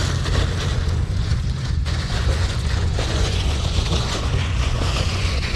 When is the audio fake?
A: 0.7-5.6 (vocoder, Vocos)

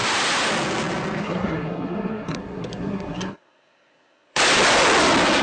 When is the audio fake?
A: 1.2-4.4 (codec, SNAC)

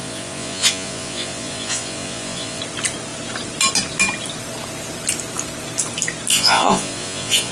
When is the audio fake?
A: 0.0-2.6 (vocoder, Vocos); 6.3-7.5

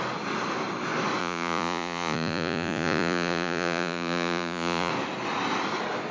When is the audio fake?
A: 1.2-4.9 (vocoder, Vocos)

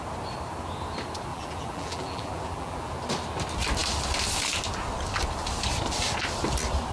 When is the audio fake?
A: 1.3-2.9 (vocoder, BigVGAN v2)